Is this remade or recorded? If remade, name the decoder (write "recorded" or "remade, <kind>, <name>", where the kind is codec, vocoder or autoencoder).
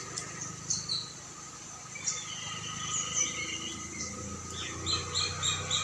recorded